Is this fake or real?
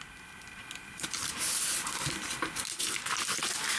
real